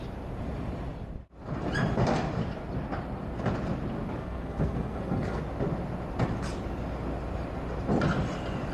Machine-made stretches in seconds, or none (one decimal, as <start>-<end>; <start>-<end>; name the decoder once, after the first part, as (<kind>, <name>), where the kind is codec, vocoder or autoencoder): 4.2-5.4 (codec, SNAC)